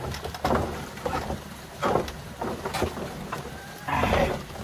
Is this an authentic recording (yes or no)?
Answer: no